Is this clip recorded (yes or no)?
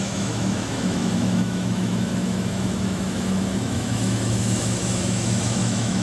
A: no